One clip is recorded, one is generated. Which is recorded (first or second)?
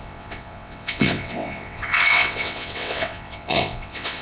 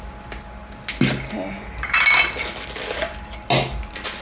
second